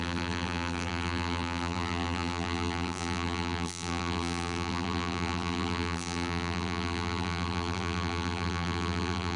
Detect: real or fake fake